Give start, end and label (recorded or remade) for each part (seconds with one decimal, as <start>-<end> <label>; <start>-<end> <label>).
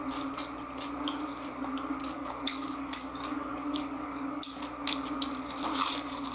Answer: 0.0-2.0 recorded; 2.0-4.6 remade; 4.6-6.3 recorded